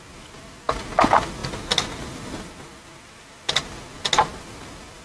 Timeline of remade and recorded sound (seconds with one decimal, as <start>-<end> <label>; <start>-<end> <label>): 0.0-5.0 recorded